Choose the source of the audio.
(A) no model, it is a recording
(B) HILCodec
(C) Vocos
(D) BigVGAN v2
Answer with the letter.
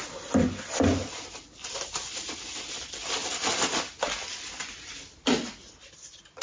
A